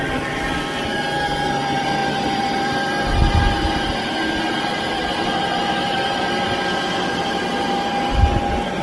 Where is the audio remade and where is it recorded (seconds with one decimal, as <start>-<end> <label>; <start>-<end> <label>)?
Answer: 0.0-8.8 recorded